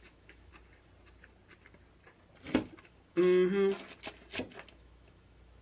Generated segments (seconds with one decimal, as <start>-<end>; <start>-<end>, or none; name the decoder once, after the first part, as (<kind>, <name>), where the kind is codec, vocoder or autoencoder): 0.0-0.5 (autoencoder, DAC-VAE); 2.8-3.2; 4.7-5.6